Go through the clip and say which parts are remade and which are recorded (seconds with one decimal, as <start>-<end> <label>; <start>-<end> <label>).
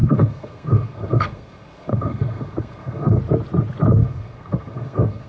0.0-3.2 remade; 3.2-4.0 recorded; 4.0-5.3 remade